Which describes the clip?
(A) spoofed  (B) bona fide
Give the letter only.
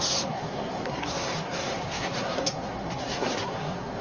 A